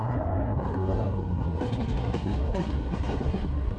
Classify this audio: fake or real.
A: fake